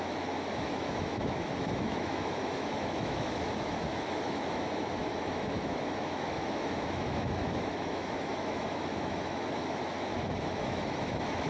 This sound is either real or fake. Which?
fake